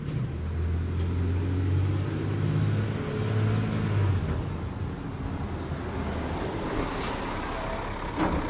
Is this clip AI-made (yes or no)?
no